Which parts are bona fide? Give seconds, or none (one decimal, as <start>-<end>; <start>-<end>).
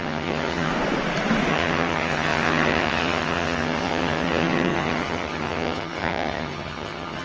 0.7-1.5